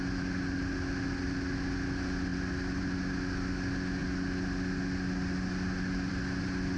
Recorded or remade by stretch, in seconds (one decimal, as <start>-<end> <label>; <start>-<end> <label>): 0.0-6.8 recorded